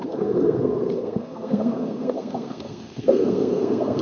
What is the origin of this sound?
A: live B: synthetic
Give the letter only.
B